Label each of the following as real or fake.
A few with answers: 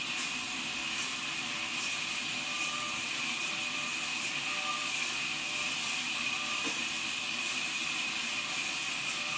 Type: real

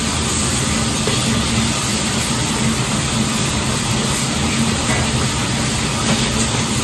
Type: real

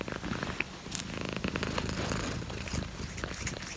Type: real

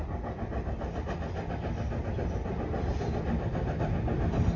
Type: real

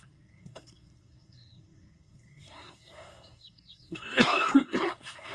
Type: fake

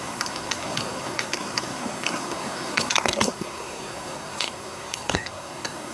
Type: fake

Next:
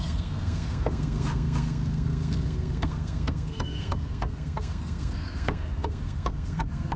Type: fake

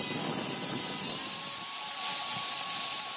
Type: real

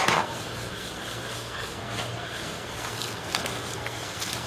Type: fake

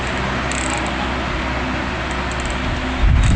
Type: real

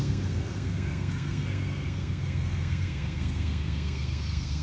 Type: fake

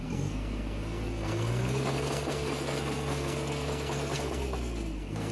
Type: fake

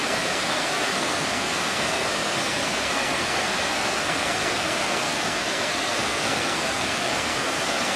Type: fake